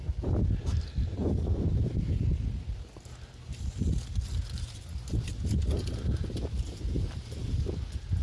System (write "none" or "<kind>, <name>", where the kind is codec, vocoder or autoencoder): none